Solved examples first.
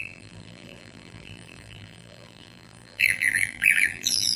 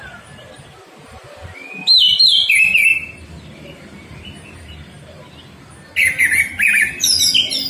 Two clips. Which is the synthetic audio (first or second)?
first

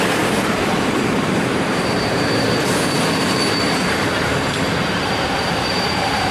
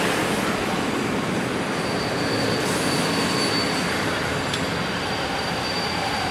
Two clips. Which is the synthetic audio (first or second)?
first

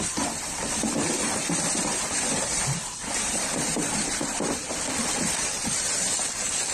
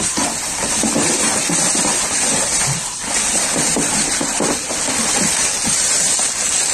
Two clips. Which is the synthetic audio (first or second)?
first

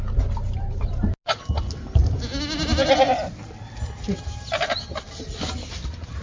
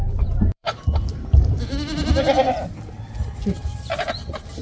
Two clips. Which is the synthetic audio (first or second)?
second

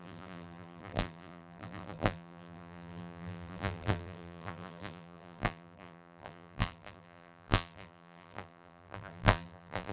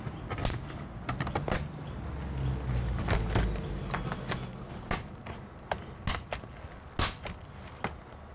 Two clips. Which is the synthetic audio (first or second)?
first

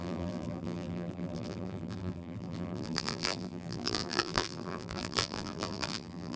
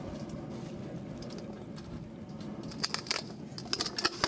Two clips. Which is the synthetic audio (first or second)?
first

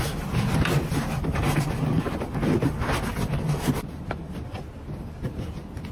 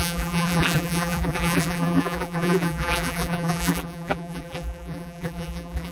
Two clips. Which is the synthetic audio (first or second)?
second